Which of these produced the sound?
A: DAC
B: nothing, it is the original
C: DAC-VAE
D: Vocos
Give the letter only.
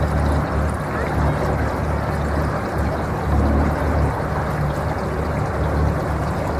B